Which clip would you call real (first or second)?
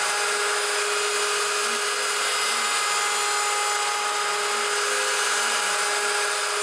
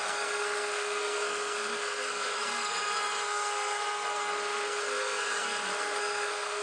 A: first